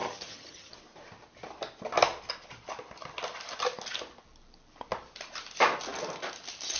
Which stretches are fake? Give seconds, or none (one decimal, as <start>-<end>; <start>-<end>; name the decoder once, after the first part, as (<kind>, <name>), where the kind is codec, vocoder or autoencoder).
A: 0.0-0.7 (vocoder, HiFi-GAN)